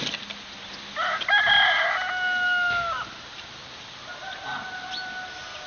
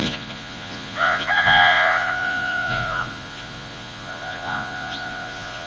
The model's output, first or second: second